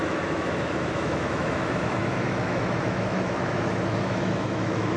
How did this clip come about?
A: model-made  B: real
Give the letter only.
A